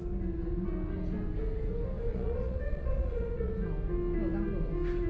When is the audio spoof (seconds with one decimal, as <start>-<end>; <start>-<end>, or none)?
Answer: 2.1-3.5